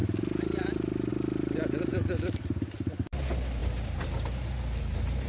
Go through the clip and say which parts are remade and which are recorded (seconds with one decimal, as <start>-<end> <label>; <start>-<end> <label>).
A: 0.0-5.3 recorded